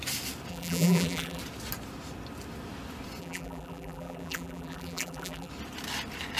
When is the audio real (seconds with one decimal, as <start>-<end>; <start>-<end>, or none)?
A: 0.0-0.5; 1.4-3.2; 5.5-6.4